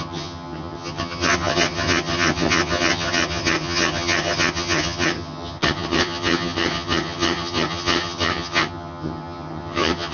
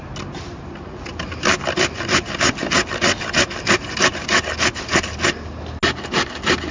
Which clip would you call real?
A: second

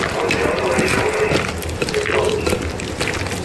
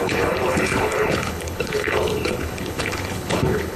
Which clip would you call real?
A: first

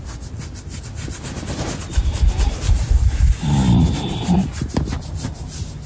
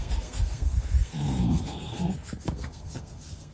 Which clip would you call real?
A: first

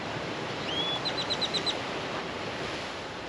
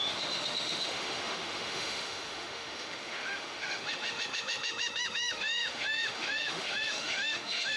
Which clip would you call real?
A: first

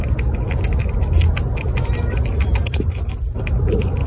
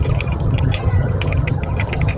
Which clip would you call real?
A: first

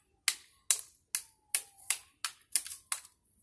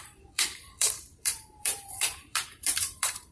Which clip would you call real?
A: first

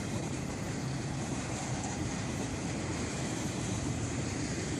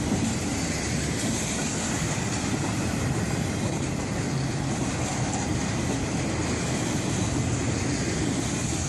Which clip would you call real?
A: second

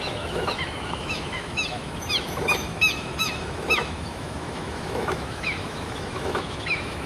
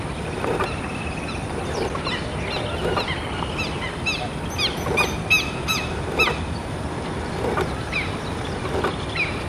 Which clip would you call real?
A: second